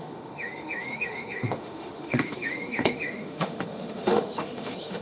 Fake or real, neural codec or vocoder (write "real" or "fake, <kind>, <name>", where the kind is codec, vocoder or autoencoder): fake, autoencoder, DAC-VAE